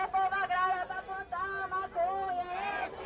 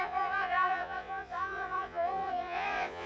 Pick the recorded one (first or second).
first